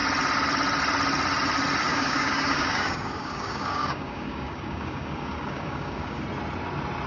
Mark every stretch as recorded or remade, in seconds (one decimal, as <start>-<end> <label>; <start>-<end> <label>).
0.0-1.9 recorded; 1.9-6.2 remade; 6.2-7.1 recorded